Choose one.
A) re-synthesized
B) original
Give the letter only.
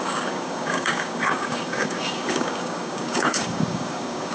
A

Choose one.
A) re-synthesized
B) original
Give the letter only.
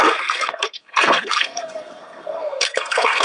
A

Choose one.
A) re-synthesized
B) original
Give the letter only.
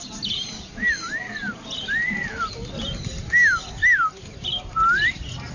B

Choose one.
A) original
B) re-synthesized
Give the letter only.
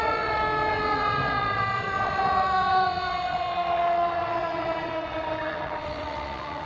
B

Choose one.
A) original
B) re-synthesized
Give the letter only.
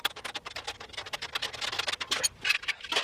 A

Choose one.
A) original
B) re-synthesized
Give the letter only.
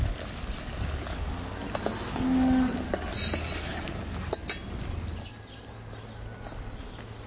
A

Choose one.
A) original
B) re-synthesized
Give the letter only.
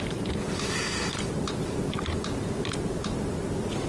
A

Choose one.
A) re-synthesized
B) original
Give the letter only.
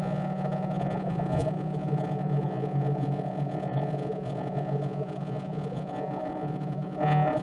A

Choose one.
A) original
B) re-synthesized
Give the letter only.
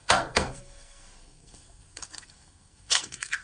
B